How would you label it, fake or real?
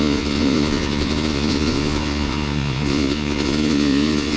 fake